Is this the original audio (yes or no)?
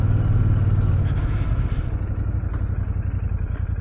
yes